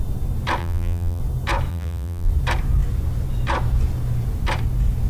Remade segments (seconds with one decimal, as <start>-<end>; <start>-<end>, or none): 0.6-1.2; 1.7-2.3